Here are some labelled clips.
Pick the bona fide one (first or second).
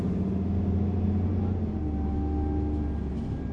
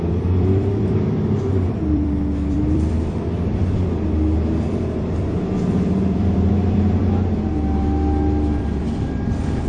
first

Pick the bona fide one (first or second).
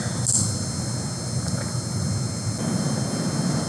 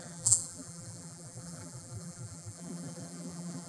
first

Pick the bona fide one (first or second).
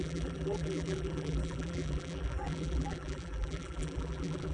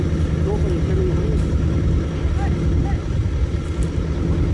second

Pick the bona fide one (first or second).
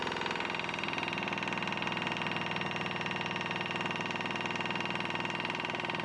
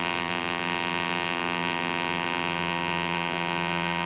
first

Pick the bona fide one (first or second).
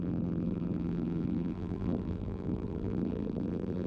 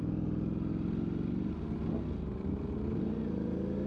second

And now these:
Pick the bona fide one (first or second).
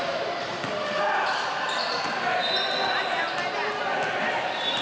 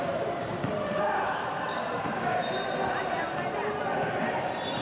first